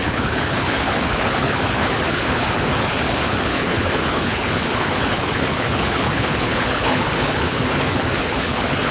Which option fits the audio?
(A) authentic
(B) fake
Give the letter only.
B